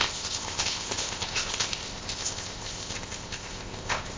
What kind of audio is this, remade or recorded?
remade